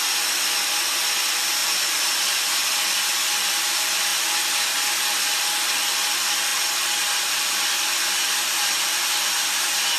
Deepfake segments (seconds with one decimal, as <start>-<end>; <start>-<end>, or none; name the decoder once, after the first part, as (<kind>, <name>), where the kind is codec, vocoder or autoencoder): 1.6-2.1 (vocoder, BigVGAN v2)